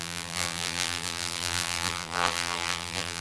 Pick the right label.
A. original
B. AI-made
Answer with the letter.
B